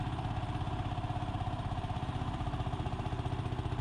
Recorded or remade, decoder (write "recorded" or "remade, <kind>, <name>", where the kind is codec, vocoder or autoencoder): remade, vocoder, BigVGAN v2